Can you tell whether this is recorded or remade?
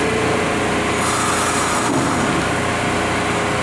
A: recorded